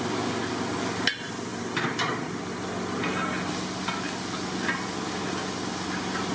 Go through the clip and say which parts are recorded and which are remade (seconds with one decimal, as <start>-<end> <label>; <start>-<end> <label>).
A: 0.0-6.3 recorded